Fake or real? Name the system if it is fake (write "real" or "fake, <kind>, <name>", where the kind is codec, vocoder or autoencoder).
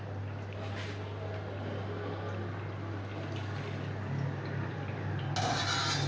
real